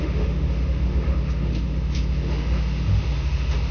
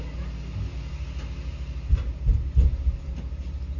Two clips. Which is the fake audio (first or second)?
first